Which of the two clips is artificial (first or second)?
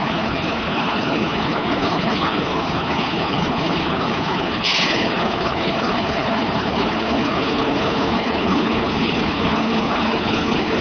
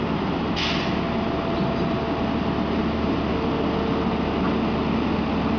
first